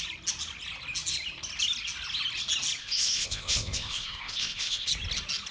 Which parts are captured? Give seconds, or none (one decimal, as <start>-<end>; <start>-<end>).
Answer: 0.0-2.8; 4.9-5.5